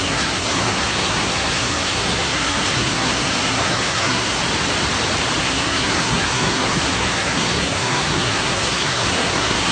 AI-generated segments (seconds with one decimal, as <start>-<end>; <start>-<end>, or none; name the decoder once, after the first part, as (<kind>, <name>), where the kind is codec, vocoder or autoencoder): 0.0-4.4 (codec, SNAC); 5.4-9.7

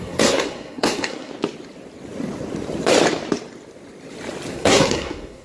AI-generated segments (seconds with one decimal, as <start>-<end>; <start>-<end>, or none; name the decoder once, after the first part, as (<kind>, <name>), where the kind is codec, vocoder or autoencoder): 0.0-1.3 (codec, SNAC); 4.5-5.4

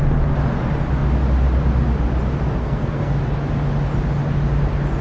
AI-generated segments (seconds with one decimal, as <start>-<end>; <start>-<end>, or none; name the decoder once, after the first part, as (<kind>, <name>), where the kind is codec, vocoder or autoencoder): 2.6-3.2 (codec, SNAC)

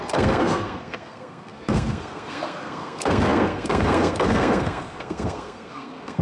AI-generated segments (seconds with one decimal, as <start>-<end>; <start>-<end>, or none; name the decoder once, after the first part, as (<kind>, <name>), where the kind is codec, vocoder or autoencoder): 0.0-6.2 (codec, SNAC)

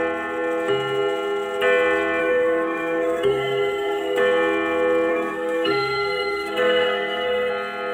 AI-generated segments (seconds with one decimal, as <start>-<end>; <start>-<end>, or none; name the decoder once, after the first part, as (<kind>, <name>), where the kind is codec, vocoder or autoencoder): 2.2-4.2 (codec, SNAC); 5.1-7.5

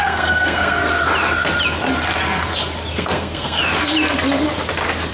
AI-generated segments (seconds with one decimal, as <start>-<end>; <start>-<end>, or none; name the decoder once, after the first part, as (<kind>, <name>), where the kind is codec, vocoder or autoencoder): 0.0-0.8 (codec, SNAC); 2.9-3.6

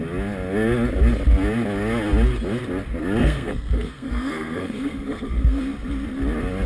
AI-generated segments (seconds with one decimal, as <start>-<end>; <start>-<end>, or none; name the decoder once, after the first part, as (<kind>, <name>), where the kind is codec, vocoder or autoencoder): 3.2-5.6 (codec, SNAC)